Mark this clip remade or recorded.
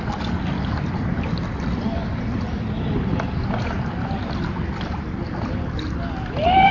recorded